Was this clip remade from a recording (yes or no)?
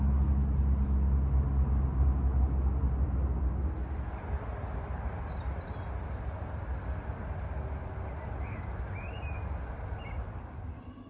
no